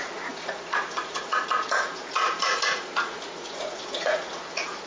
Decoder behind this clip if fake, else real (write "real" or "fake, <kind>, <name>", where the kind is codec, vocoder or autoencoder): fake, vocoder, Vocos